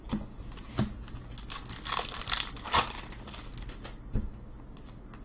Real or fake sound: real